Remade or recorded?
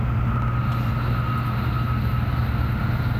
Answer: recorded